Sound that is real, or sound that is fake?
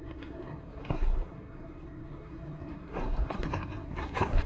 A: fake